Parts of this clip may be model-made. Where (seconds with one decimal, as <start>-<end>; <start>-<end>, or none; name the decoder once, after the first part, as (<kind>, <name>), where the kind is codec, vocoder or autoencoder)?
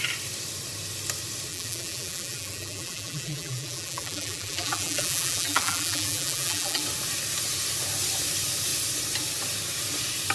1.5-6.8 (vocoder, BigVGAN v2)